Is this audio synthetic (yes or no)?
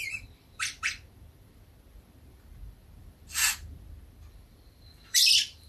yes